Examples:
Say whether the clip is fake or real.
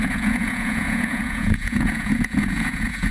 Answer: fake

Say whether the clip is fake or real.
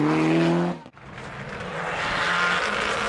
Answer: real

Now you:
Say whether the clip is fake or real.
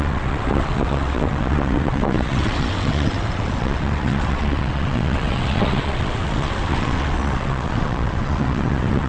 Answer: fake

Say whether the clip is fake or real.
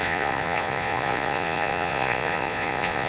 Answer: fake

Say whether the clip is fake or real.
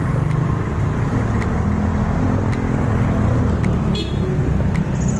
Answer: real